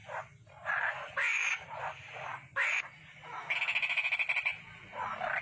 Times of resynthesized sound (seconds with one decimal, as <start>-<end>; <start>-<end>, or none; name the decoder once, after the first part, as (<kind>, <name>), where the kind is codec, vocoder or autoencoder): none